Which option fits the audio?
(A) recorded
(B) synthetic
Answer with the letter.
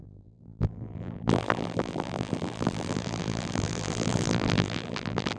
B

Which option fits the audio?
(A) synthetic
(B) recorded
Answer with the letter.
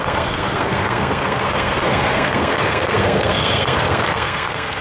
A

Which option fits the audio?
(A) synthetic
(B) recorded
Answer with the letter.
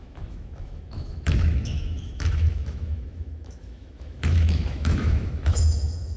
A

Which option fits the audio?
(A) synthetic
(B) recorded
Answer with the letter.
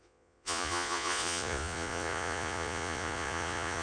A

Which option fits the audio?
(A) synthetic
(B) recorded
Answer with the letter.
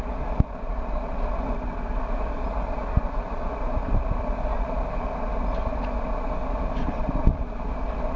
B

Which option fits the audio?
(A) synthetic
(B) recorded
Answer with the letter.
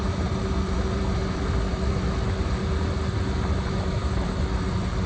A